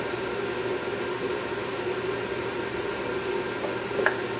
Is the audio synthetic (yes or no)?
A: no